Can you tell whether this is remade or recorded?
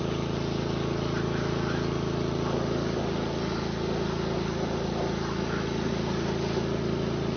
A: recorded